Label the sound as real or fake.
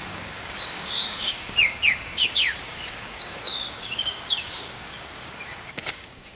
fake